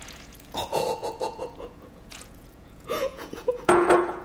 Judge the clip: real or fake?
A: fake